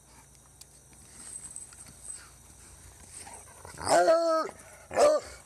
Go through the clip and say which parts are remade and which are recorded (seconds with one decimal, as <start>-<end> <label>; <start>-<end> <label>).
0.0-5.5 recorded